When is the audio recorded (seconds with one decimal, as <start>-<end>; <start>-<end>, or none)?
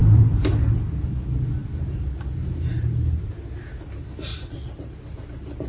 0.8-4.3; 5.0-5.7